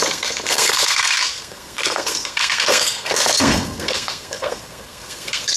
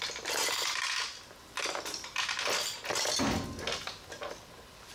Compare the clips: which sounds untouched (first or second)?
second